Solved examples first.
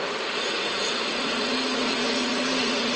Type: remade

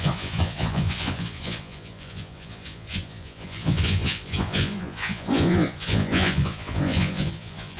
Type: remade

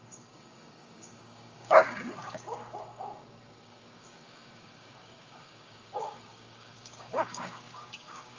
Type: remade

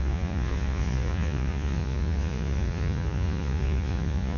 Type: remade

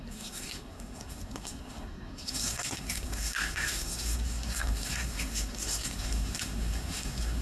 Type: remade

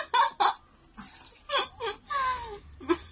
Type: recorded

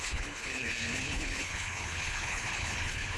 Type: remade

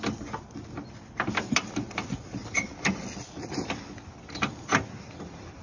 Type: recorded